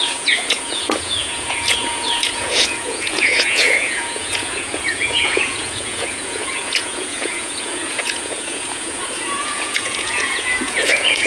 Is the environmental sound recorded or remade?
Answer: remade